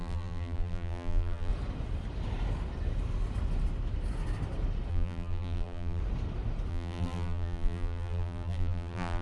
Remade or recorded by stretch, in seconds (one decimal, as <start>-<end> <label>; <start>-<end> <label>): 0.0-1.5 remade; 1.5-4.9 recorded; 4.9-6.0 remade; 6.0-6.7 recorded; 6.7-9.2 remade